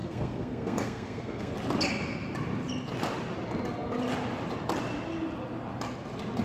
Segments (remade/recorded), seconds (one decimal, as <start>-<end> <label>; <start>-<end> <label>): 0.0-1.5 remade; 1.5-6.4 recorded